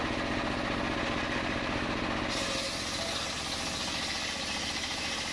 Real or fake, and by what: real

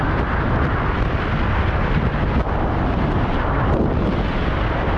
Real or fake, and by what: fake, vocoder, BigVGAN v2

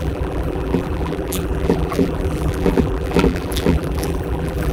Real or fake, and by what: fake, vocoder, BigVGAN v2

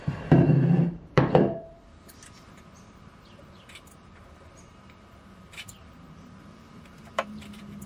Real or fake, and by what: fake, vocoder, BigVGAN v2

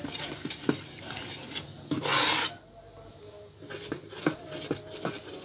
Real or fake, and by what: real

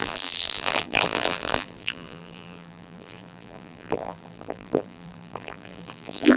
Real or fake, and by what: fake, vocoder, BigVGAN v2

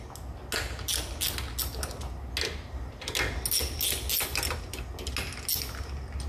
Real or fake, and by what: real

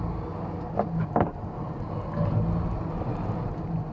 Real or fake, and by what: real